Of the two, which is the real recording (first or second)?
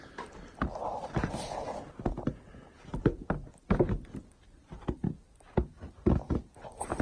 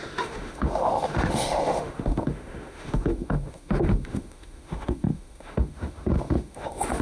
first